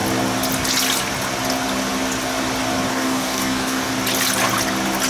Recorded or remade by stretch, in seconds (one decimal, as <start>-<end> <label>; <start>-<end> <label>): 0.0-2.9 recorded; 2.9-3.9 remade; 3.9-5.1 recorded